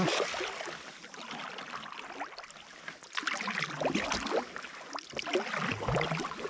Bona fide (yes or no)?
yes